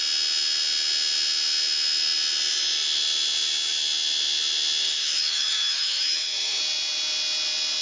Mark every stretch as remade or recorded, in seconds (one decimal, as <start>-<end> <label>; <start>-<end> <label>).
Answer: 0.0-4.8 recorded; 4.8-6.6 remade; 6.6-7.8 recorded